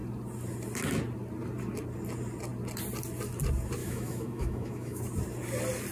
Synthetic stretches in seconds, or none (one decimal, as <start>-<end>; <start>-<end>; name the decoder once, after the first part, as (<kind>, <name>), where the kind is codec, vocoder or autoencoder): 3.8-5.0 (autoencoder, DAC-VAE)